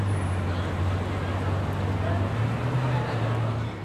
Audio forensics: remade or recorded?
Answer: recorded